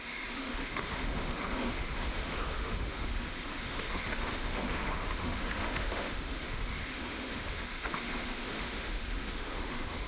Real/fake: fake